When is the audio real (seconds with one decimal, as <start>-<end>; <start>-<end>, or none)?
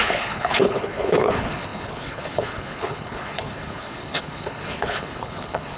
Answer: none